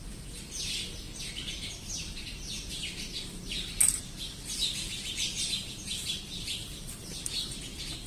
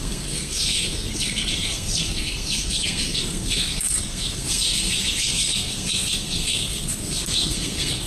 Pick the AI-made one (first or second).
second